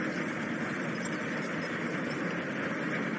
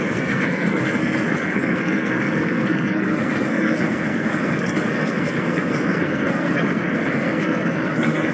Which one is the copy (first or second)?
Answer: second